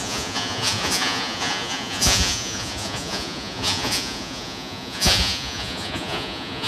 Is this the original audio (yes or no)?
no